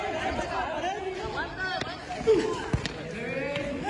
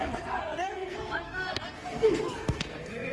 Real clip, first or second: first